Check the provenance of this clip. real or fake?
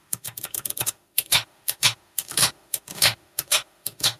fake